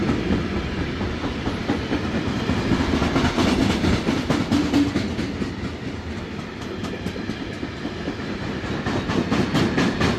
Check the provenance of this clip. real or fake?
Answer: real